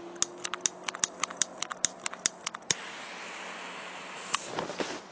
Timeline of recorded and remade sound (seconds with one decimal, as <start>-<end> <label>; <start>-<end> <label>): 0.0-5.1 recorded